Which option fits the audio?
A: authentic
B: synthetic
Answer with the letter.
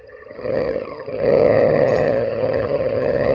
B